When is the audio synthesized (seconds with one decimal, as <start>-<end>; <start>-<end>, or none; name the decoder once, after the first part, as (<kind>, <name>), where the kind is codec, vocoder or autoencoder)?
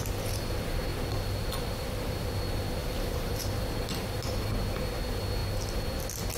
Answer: 2.8-3.4 (vocoder, BigVGAN v2)